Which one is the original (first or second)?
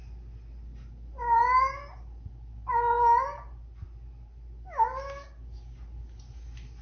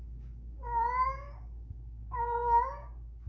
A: first